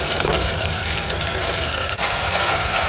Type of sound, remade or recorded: remade